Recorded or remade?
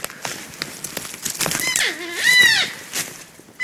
recorded